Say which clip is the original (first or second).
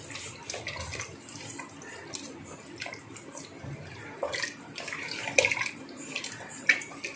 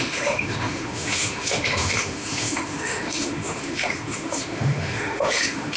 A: first